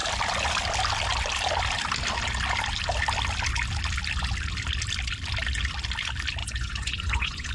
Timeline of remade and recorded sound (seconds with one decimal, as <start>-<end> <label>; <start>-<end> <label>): 0.0-6.4 recorded; 6.4-7.5 remade